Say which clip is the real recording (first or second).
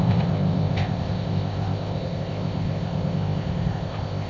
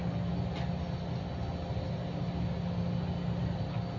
second